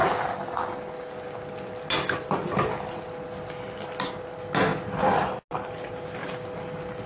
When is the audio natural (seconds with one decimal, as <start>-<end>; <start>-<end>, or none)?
0.0-7.1